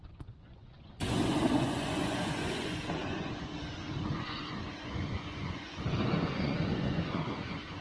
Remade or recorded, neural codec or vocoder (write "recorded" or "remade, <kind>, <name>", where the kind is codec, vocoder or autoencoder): remade, vocoder, Vocos